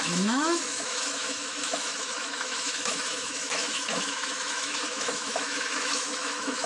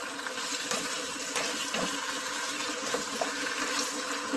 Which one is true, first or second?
second